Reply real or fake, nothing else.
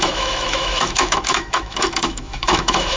fake